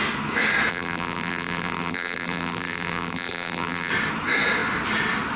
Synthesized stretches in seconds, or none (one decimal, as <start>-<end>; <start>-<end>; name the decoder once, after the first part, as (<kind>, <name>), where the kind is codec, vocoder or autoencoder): 0.7-3.9 (vocoder, BigVGAN v2)